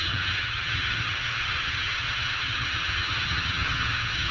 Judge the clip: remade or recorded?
remade